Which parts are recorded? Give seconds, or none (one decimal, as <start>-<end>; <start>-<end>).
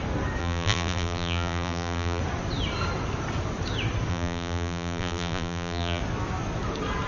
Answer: 0.0-0.4; 2.2-4.1; 6.0-7.1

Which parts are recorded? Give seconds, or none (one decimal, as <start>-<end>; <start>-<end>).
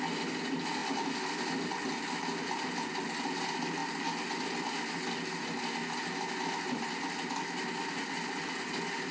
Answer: 0.0-9.1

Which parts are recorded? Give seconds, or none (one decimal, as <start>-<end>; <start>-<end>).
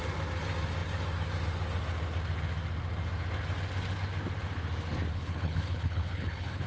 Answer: 0.0-5.1